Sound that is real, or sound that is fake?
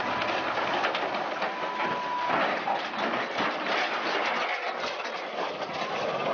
real